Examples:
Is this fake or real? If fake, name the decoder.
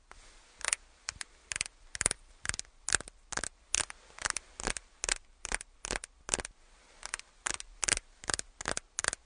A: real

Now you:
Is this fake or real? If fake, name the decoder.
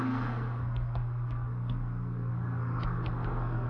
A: fake, codec, SNAC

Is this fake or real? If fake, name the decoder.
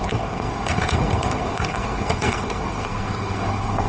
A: fake, codec, SNAC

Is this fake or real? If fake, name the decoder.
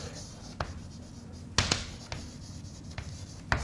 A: real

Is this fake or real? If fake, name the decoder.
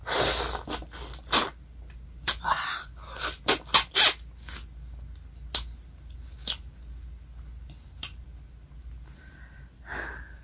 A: real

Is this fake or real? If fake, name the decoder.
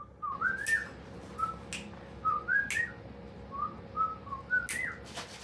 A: real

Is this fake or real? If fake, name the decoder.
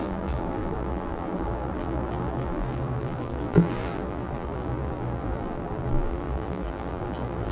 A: fake, vocoder, BigVGAN v2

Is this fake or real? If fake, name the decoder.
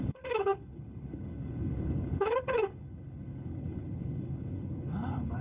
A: fake, codec, HILCodec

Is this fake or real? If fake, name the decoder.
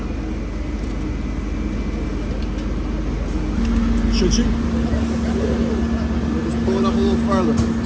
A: real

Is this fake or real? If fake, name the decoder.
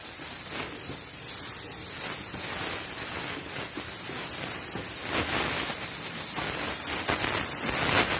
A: real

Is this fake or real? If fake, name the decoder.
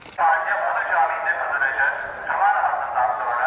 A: real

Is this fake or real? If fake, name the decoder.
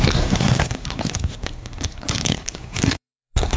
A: fake, codec, SNAC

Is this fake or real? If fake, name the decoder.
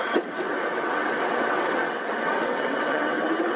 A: fake, vocoder, WaveNeXt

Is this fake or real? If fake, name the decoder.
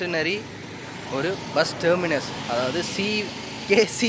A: real